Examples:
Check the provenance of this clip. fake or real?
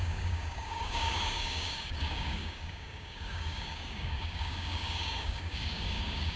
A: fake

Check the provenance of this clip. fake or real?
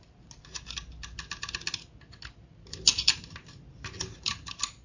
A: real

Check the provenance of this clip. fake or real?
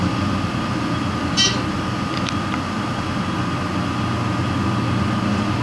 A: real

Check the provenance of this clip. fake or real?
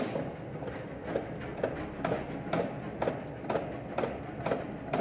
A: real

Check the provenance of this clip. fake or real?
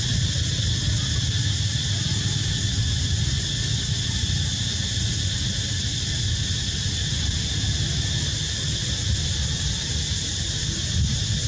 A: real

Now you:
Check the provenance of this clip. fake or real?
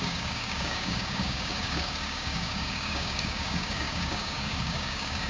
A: fake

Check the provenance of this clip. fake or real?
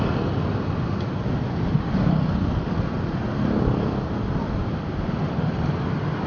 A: real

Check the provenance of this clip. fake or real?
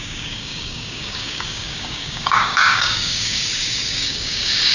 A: fake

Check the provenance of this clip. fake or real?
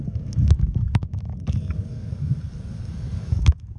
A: fake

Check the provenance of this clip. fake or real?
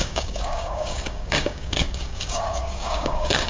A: fake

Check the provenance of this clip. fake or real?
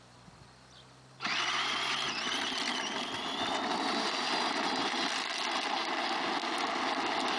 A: real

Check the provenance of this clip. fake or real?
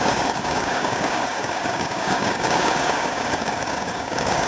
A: fake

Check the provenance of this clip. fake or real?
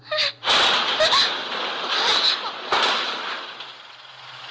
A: real